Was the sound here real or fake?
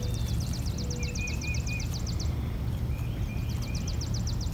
real